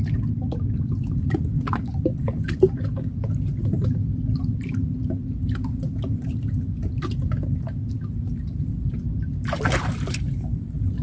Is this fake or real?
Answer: real